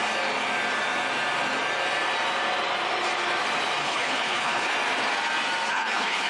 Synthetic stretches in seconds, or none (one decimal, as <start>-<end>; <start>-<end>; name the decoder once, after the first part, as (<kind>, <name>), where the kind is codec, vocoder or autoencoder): 3.8-4.7 (codec, HILCodec); 5.7-6.3